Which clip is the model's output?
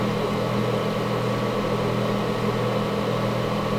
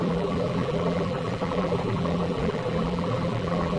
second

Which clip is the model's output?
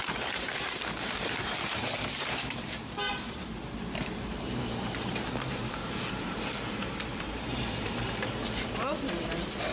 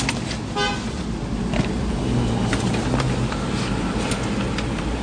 first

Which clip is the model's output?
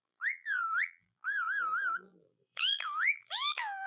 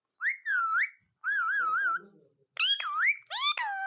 first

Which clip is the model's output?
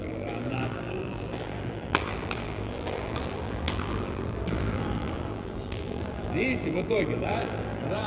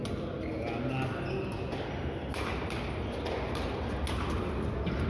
first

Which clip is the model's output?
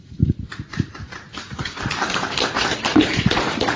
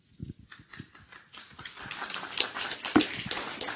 first